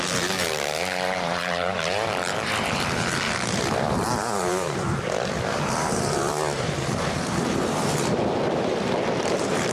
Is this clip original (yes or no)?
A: no